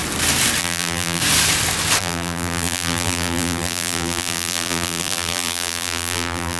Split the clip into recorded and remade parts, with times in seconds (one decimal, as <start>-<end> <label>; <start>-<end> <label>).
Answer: 0.0-0.6 recorded; 0.6-1.2 remade; 1.2-2.0 recorded; 2.0-6.6 remade